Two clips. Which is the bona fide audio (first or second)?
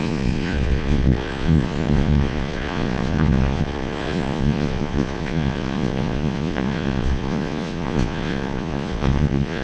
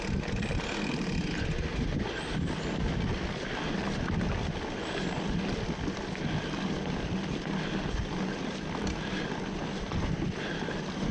second